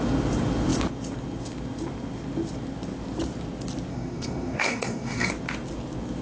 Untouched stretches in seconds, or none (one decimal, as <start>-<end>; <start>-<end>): 0.0-3.9; 5.3-6.2